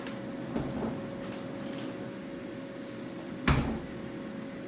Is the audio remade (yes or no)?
no